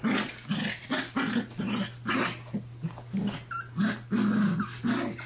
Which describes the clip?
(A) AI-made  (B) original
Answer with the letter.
B